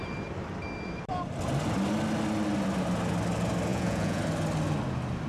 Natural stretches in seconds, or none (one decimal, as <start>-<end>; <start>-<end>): 0.0-3.7; 4.2-5.3